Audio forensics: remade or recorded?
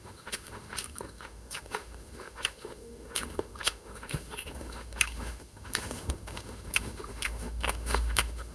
remade